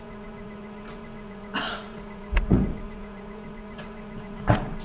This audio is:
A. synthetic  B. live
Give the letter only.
A